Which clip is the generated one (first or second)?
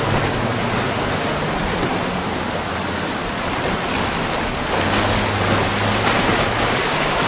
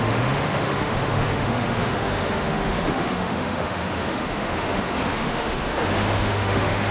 second